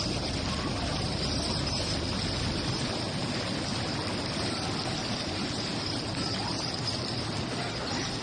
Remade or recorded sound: recorded